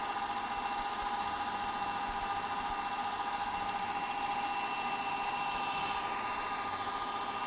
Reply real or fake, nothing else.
real